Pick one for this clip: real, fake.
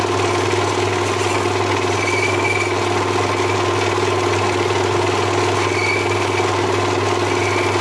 real